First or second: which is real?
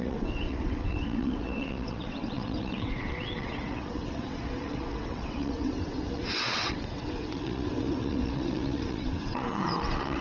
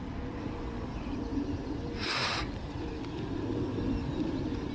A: second